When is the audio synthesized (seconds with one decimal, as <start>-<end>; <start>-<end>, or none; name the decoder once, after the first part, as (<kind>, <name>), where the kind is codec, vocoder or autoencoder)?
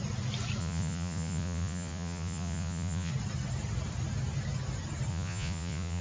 0.6-3.1 (vocoder, Vocos); 5.1-6.0